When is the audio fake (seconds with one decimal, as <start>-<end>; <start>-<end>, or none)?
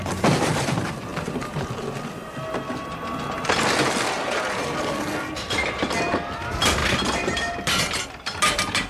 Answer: none